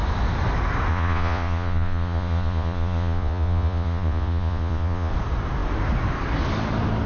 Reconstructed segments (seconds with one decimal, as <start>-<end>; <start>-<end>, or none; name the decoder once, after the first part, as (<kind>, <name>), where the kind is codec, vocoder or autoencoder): 0.9-5.1 (vocoder, Vocos)